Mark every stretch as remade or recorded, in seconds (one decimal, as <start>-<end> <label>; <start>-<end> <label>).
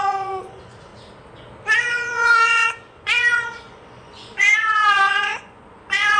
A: 0.0-0.9 remade; 0.9-1.8 recorded; 1.8-6.2 remade